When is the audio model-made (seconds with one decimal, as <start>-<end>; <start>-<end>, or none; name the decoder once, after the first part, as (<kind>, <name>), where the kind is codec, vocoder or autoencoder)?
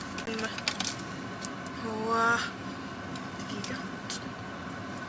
none